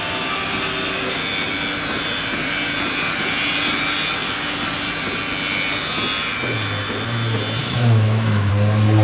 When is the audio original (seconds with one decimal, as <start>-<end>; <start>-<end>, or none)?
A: 0.0-7.6; 8.5-9.0